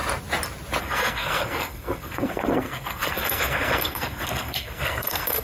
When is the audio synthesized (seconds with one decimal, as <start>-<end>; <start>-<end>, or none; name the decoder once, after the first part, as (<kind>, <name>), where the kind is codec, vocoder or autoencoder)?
0.8-5.4 (codec, SNAC)